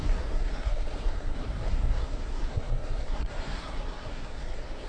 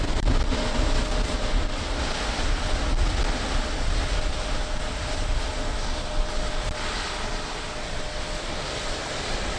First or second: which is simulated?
first